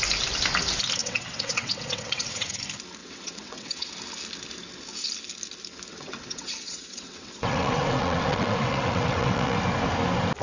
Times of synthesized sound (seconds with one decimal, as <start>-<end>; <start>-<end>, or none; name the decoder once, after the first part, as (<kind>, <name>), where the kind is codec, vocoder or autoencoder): 1.0-2.6 (vocoder, WaveNeXt); 3.0-3.9; 5.9-9.6